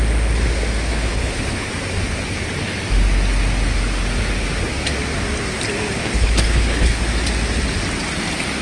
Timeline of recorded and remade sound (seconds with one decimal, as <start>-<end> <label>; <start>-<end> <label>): 0.0-0.9 recorded; 0.9-1.7 remade; 1.7-6.0 recorded; 6.0-7.0 remade; 7.0-8.6 recorded